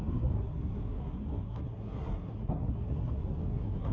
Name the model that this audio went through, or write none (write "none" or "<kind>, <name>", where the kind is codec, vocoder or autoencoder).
codec, SNAC